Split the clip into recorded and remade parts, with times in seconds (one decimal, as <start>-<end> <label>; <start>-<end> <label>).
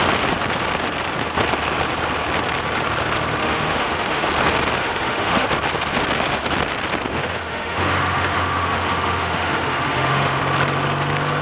0.0-3.4 recorded; 3.4-4.3 remade; 4.3-4.8 recorded; 4.8-5.5 remade; 5.5-7.1 recorded; 7.1-10.4 remade; 10.4-11.4 recorded